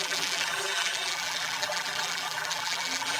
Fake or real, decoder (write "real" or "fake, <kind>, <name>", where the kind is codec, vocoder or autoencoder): fake, vocoder, BigVGAN v2